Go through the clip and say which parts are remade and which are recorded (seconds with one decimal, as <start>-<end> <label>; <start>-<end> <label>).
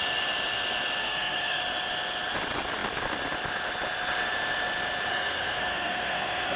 0.0-1.0 recorded; 1.0-1.6 remade; 1.6-5.1 recorded; 5.1-6.6 remade